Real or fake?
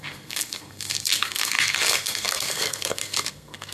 fake